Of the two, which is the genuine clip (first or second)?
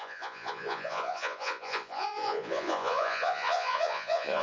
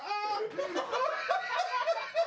second